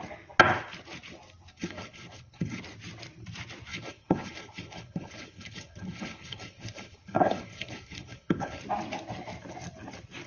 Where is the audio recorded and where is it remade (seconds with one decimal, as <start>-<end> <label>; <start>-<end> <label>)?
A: 0.0-1.5 recorded; 1.5-2.6 remade; 2.6-3.7 recorded; 3.7-8.6 remade; 8.6-10.3 recorded